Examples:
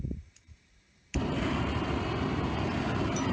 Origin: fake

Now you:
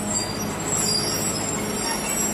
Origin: real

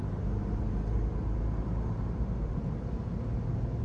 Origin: real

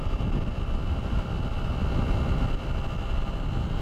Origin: real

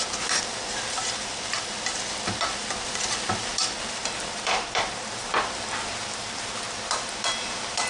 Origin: fake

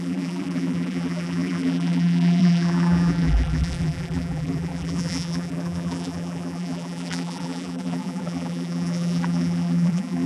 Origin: fake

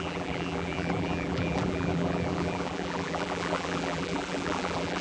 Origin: fake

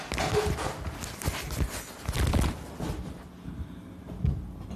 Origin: real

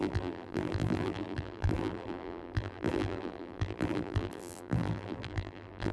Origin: fake